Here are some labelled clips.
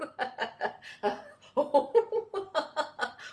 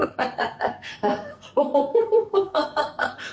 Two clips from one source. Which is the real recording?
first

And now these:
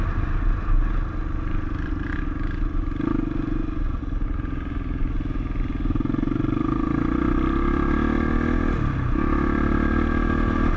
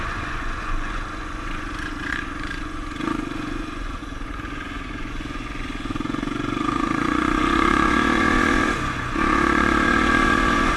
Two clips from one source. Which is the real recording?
first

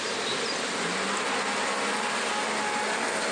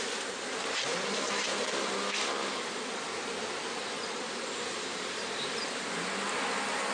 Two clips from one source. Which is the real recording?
first